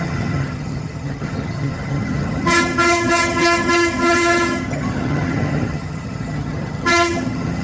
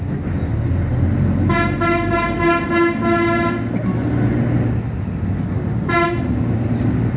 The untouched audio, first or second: second